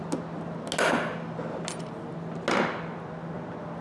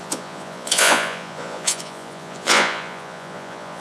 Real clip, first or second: first